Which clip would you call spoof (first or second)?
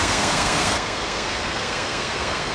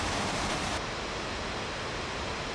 first